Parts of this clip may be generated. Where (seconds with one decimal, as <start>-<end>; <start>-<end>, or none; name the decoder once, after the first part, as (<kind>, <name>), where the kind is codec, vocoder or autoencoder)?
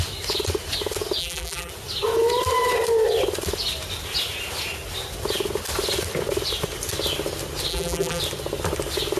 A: 1.2-1.7 (vocoder, BigVGAN v2); 7.7-8.2